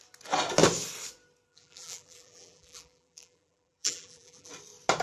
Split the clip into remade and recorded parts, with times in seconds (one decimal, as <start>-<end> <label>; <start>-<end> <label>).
0.0-1.5 recorded; 1.5-4.5 remade; 4.5-5.0 recorded